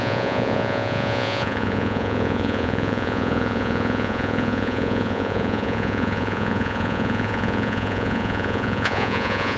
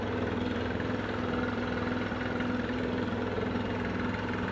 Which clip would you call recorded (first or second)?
second